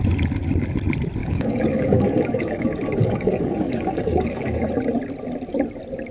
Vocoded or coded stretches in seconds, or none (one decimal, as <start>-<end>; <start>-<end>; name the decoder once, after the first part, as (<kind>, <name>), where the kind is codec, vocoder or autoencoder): 1.2-4.7 (codec, DAC)